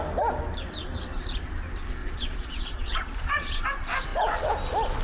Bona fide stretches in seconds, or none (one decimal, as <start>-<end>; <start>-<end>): 0.0-2.0; 3.6-5.0